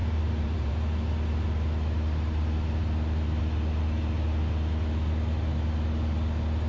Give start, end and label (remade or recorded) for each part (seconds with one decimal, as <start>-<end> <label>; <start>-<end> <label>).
0.0-0.7 remade; 0.7-6.7 recorded